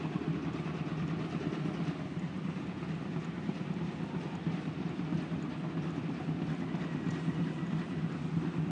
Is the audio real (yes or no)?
yes